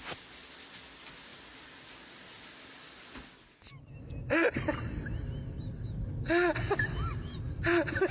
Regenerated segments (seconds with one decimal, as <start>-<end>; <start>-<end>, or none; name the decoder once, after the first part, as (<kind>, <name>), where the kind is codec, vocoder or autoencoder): none